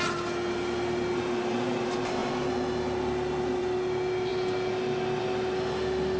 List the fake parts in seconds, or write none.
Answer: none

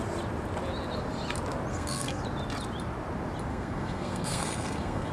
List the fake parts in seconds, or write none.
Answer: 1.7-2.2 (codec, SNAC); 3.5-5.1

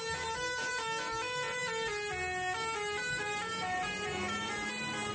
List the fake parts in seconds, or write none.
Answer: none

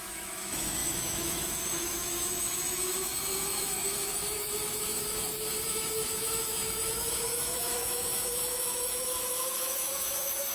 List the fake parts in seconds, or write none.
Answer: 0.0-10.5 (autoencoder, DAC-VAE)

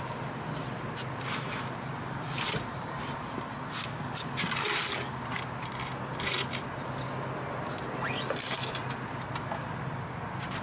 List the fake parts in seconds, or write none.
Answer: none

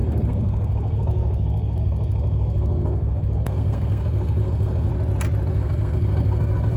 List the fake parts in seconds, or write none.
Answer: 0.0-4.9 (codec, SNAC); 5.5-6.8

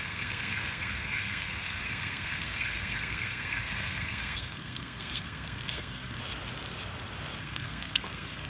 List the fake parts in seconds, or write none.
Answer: 0.0-6.2 (codec, SNAC); 7.4-8.5

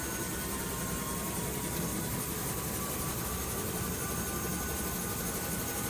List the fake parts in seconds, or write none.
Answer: 1.9-3.3 (vocoder, BigVGAN v2)